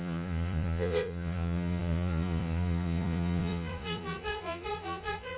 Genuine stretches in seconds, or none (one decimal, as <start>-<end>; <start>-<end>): none